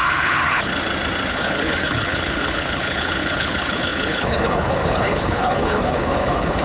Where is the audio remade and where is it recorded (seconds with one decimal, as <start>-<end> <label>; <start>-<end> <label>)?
0.0-0.7 remade; 0.7-1.3 recorded; 1.3-6.6 remade